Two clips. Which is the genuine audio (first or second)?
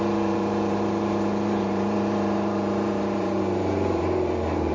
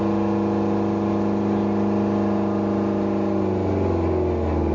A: second